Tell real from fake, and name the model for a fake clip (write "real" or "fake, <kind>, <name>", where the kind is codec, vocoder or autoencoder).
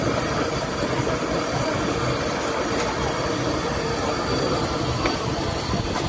real